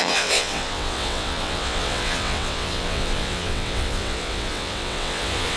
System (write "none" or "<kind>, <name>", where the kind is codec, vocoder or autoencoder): vocoder, WaveNeXt